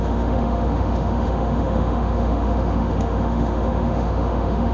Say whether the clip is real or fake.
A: fake